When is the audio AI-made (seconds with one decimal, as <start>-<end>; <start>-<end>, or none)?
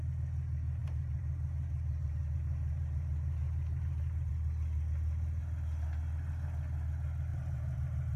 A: 0.8-4.3; 7.3-8.2